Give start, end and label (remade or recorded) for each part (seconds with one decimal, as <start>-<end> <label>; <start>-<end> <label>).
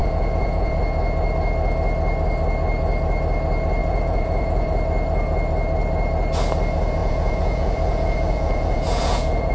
0.0-0.8 remade; 0.8-3.8 recorded; 3.8-4.7 remade; 4.7-7.0 recorded; 7.0-9.5 remade